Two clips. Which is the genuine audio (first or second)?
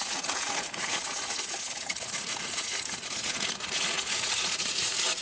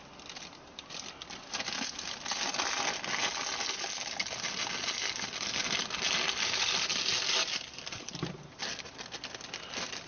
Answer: second